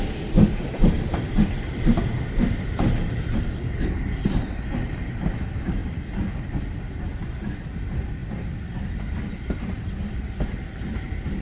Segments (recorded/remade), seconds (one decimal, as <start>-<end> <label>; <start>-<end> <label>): 0.0-5.8 recorded; 5.8-6.4 remade; 6.4-8.2 recorded; 8.2-8.9 remade; 8.9-11.4 recorded